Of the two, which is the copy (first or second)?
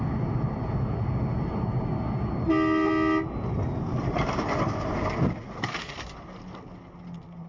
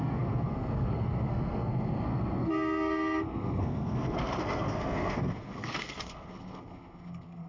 second